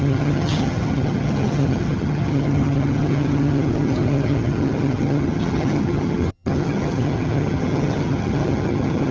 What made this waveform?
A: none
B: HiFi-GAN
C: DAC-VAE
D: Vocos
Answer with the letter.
B